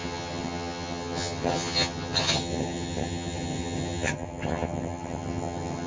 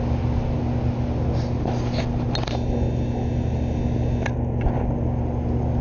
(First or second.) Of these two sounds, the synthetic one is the first